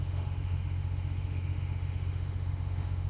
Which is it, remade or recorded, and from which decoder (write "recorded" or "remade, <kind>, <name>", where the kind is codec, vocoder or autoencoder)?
remade, autoencoder, DAC-VAE